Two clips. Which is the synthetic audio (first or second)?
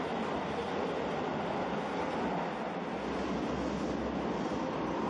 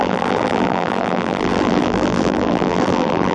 second